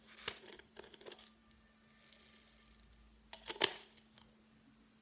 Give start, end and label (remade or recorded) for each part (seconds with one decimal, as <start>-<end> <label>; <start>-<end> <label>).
0.0-5.0 recorded